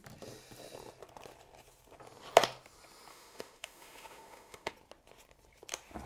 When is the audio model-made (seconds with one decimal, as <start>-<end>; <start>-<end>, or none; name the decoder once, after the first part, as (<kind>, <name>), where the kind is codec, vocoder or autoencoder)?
3.1-4.7 (autoencoder, DAC-VAE)